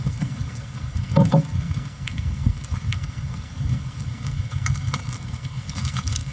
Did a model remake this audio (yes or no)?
yes